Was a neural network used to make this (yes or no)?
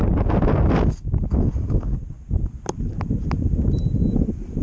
no